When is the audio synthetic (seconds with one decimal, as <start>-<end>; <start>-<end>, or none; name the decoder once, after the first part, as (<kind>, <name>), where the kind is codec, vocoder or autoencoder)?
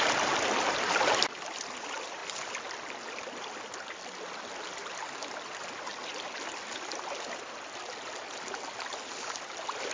none